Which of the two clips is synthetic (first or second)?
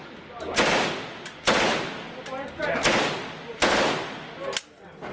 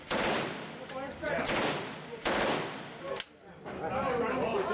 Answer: second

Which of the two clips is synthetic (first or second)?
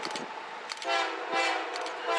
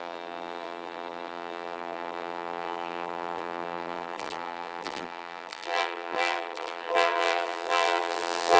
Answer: second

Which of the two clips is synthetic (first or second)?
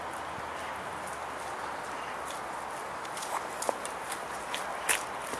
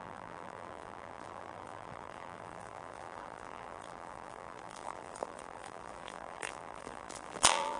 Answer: second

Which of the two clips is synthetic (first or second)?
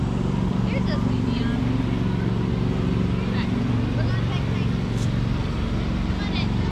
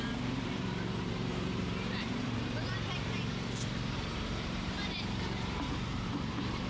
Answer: second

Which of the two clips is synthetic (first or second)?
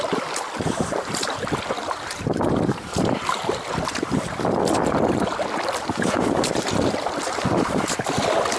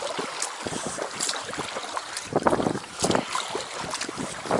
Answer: first